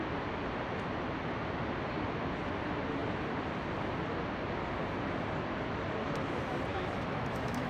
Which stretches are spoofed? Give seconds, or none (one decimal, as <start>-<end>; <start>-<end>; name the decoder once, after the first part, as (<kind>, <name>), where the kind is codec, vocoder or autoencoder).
6.7-7.7 (autoencoder, DAC-VAE)